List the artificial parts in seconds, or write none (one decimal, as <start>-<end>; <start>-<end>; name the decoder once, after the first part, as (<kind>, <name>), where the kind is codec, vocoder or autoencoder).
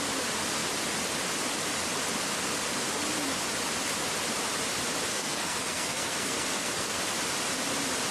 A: 5.1-7.0 (codec, SNAC)